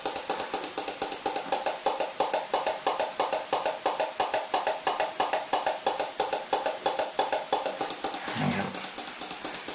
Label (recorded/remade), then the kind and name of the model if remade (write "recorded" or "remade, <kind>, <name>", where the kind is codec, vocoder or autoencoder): recorded